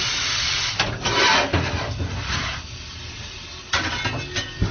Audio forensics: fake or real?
real